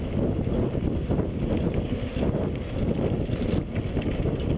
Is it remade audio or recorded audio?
recorded